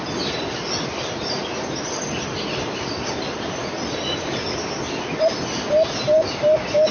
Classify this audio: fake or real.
real